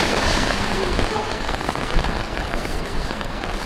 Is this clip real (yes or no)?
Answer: no